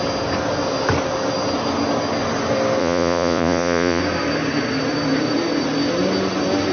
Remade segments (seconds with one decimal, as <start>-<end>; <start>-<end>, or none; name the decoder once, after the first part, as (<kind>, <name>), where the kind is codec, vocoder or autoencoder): 2.8-4.0 (vocoder, Vocos)